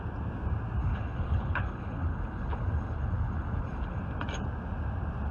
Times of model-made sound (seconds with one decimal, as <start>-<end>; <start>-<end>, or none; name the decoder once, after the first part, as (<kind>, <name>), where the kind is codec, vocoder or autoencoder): 0.8-4.0 (codec, HILCodec)